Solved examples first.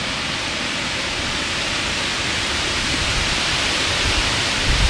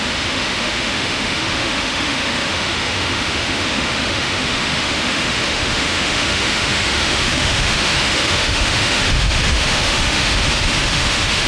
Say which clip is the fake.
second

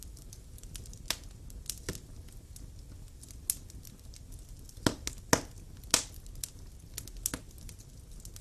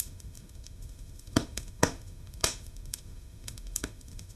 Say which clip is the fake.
second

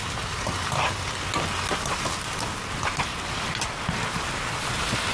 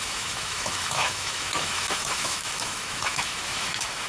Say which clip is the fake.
second